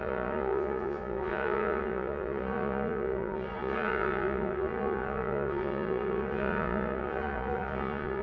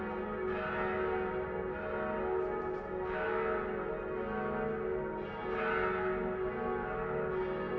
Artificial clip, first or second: first